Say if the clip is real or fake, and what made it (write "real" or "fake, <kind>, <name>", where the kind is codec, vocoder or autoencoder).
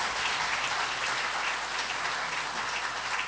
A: real